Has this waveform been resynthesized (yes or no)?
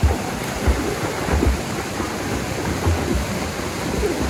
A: no